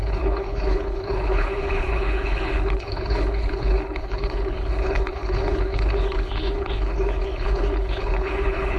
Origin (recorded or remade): remade